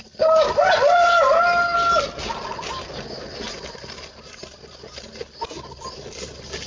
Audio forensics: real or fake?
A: real